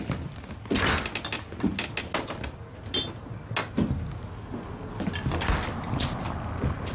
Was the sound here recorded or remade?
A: recorded